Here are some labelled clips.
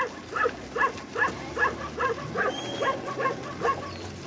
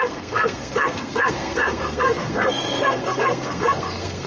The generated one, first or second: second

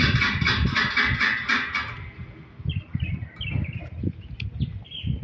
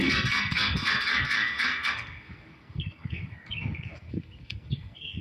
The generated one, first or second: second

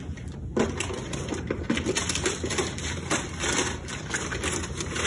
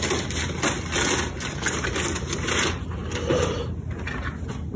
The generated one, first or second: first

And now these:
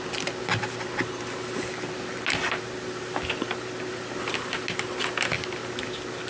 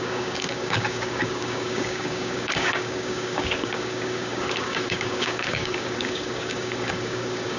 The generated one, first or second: second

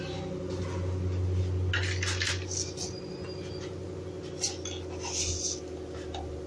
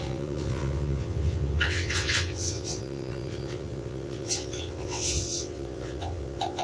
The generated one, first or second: second